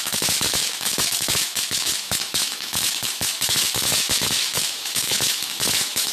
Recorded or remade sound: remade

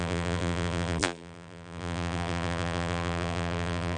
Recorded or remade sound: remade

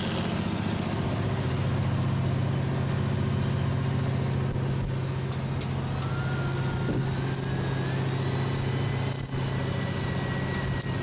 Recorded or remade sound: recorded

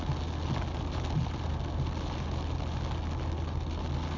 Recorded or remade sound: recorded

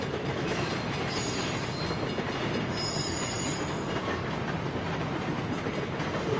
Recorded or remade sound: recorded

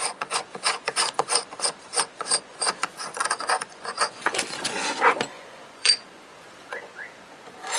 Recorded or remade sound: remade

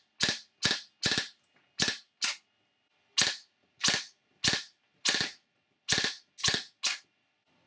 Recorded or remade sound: recorded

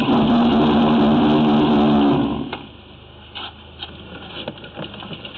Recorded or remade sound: recorded